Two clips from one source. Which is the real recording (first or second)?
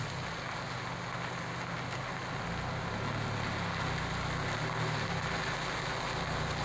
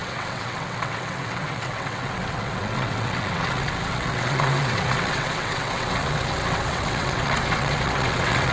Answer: first